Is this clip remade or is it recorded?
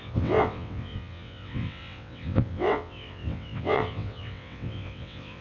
remade